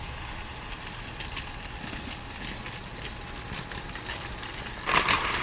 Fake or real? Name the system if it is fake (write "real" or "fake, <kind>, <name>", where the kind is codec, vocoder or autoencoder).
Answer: real